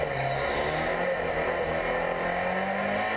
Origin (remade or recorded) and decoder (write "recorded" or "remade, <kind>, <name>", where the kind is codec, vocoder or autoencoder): recorded